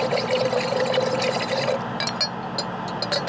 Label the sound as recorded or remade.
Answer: recorded